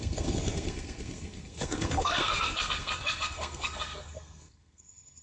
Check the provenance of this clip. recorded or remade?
remade